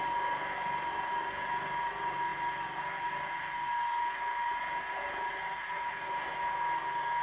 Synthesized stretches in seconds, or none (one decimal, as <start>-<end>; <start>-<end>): none